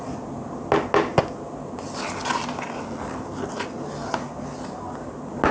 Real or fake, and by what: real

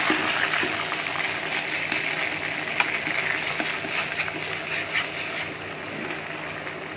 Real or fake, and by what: real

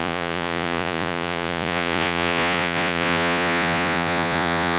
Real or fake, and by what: fake, vocoder, Vocos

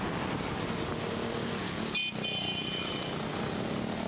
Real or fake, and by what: real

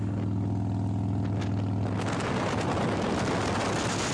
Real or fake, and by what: real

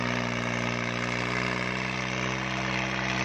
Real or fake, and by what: fake, vocoder, BigVGAN v2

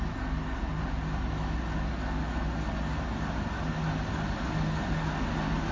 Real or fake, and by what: real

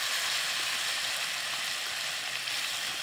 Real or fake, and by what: real